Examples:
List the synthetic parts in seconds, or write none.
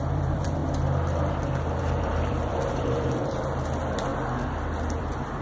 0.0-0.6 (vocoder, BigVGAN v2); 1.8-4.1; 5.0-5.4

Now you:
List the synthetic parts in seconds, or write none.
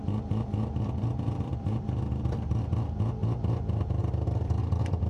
0.0-2.5 (vocoder, BigVGAN v2)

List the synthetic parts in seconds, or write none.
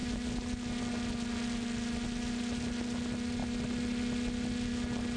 none